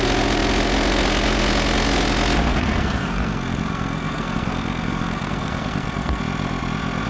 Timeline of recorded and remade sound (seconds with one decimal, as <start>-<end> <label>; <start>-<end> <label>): 0.0-2.5 recorded; 2.5-6.2 remade; 6.2-7.1 recorded